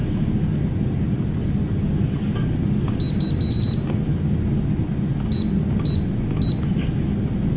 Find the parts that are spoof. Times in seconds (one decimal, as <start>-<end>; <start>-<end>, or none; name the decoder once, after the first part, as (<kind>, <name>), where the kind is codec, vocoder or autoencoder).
none